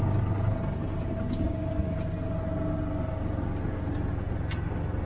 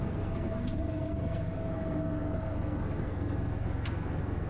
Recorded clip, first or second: first